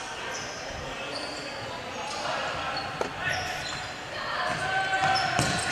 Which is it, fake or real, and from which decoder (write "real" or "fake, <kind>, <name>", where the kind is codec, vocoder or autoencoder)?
real